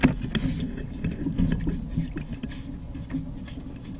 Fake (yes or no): no